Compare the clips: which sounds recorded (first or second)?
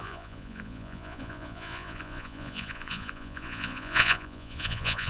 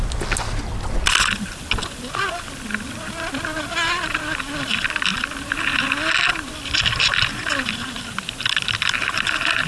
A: second